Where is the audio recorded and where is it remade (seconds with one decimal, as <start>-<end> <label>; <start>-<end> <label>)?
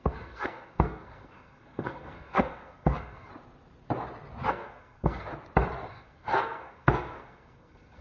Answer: 0.0-3.3 remade; 3.3-4.5 recorded; 4.5-5.3 remade; 5.3-5.9 recorded; 5.9-8.0 remade